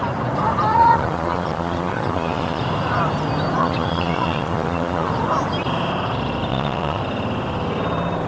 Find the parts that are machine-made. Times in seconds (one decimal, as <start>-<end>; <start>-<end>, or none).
0.7-2.6; 3.6-5.1; 6.5-7.0